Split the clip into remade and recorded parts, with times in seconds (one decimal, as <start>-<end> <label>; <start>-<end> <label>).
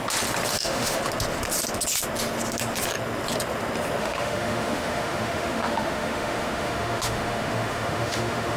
0.0-0.5 recorded; 0.5-1.0 remade; 1.0-4.0 recorded; 4.0-8.6 remade